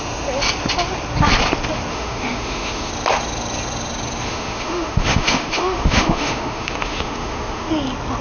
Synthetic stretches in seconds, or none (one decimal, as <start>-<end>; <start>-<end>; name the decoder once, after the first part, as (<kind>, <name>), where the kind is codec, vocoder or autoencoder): 1.9-2.9 (autoencoder, DAC-VAE); 4.3-7.7

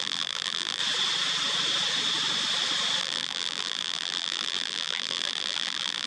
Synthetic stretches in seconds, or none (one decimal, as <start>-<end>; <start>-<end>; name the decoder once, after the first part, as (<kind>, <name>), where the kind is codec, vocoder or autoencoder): 0.0-0.8 (vocoder, BigVGAN v2); 3.0-6.1